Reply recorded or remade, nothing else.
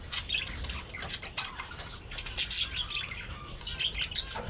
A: recorded